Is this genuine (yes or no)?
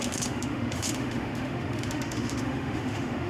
no